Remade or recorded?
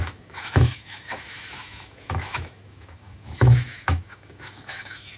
remade